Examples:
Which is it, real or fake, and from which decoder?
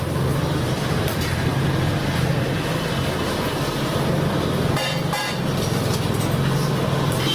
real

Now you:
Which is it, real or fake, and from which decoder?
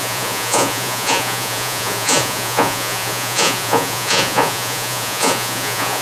fake, vocoder, Vocos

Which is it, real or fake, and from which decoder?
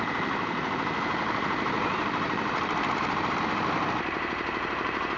fake, vocoder, BigVGAN v2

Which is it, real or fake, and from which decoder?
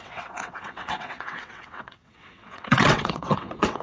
fake, vocoder, WaveNeXt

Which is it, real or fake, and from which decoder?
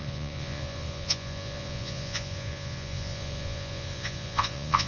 fake, vocoder, Vocos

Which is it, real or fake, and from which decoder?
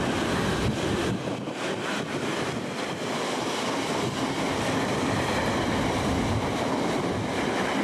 real